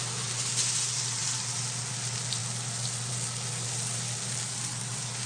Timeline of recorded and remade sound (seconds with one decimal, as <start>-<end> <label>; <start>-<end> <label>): 0.0-5.3 recorded